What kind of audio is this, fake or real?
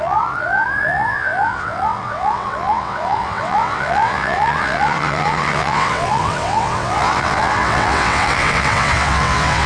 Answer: fake